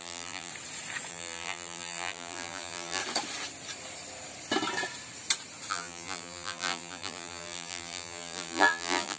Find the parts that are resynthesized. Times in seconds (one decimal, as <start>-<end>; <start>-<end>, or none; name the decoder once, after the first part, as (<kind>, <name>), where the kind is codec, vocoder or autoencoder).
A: 0.0-0.5 (vocoder, BigVGAN v2); 1.1-3.0; 5.7-9.2